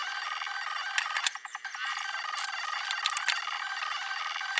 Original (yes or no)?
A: yes